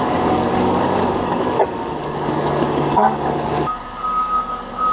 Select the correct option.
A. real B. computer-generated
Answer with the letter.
B